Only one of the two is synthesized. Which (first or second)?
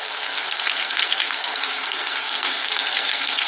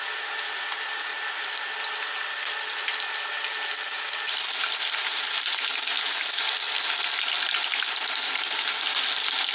first